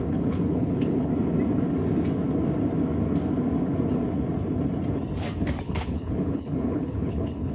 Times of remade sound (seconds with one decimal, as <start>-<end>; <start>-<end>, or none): 0.0-1.1; 5.6-7.5